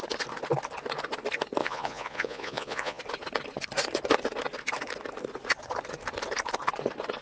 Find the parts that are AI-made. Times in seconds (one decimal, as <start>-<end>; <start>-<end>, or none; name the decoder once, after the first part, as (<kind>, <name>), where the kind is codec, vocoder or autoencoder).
1.6-3.0 (vocoder, Vocos)